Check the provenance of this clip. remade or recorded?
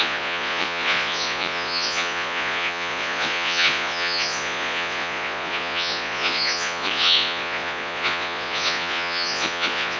remade